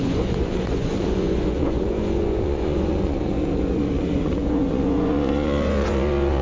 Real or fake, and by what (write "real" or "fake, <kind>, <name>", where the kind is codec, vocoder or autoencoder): fake, vocoder, Vocos